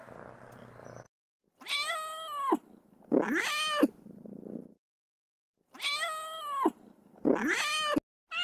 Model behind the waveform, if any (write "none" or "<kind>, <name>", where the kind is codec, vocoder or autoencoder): none